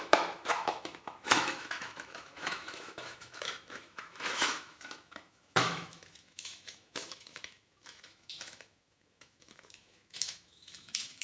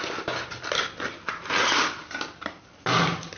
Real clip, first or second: second